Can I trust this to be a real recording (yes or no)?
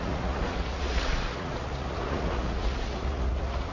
no